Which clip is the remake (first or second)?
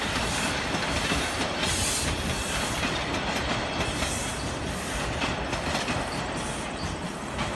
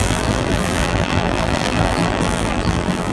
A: second